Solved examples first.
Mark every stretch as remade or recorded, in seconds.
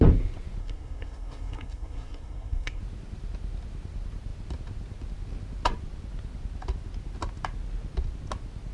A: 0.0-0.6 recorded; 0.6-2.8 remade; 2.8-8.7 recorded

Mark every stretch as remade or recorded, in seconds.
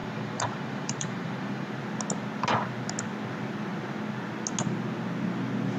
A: 0.0-1.7 remade; 1.7-5.8 recorded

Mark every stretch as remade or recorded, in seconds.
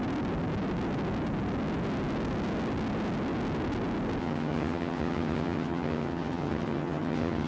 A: 0.0-4.2 recorded; 4.2-7.5 remade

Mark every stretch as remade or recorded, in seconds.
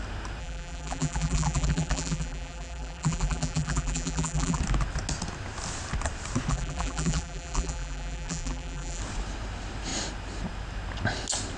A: 0.0-0.4 recorded; 0.4-4.6 remade; 4.6-6.5 recorded; 6.5-9.0 remade; 9.0-11.6 recorded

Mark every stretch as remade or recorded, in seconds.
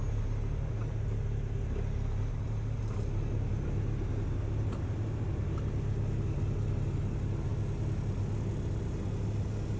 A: 0.0-9.8 recorded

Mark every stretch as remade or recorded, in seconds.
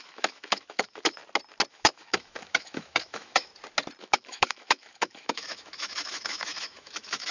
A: 0.0-1.2 remade; 1.2-1.7 recorded; 1.7-3.5 remade; 3.5-4.0 recorded; 4.0-7.3 remade